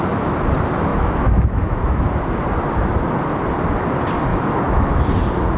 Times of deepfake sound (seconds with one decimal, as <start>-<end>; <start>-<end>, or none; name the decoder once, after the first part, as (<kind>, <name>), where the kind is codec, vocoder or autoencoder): 0.9-2.1 (autoencoder, DAC-VAE); 4.3-5.0